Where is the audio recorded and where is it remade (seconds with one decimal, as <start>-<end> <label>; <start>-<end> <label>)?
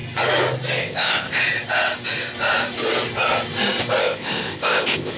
0.0-0.8 recorded; 0.8-1.4 remade; 1.4-4.0 recorded; 4.0-5.2 remade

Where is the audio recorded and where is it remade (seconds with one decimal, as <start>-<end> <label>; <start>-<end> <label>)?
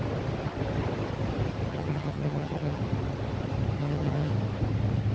0.0-1.7 recorded; 1.7-2.8 remade; 2.8-3.8 recorded; 3.8-4.3 remade; 4.3-5.1 recorded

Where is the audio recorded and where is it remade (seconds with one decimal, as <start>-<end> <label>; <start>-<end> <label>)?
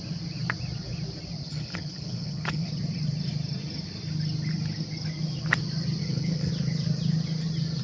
0.0-1.4 recorded; 1.4-2.7 remade; 2.7-6.0 recorded; 6.0-6.5 remade; 6.5-7.8 recorded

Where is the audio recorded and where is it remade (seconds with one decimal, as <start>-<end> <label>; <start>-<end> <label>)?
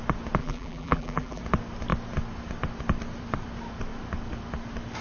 0.0-0.4 recorded; 0.4-1.4 remade; 1.4-5.0 recorded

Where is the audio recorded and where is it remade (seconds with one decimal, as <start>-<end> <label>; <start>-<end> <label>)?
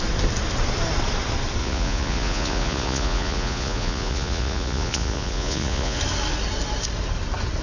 0.0-1.6 recorded; 1.6-6.0 remade; 6.0-7.6 recorded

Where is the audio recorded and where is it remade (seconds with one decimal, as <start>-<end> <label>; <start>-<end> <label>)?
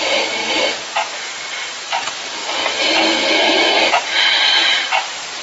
0.0-0.4 remade; 0.4-1.7 recorded; 1.7-2.4 remade; 2.4-3.9 recorded; 3.9-5.4 remade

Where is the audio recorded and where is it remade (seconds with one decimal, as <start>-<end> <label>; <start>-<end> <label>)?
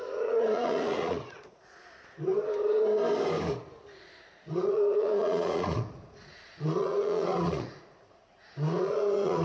0.0-1.8 remade; 1.8-4.0 recorded; 4.0-9.4 remade